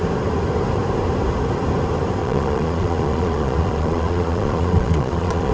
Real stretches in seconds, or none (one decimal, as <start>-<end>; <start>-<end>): 0.0-2.2